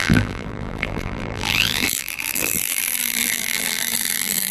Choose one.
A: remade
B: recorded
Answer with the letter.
A